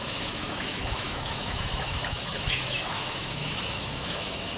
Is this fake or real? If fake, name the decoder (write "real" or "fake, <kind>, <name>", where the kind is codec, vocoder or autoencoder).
fake, autoencoder, DAC-VAE